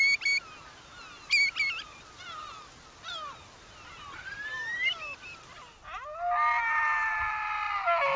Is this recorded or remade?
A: recorded